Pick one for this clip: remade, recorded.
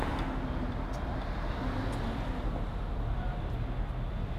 recorded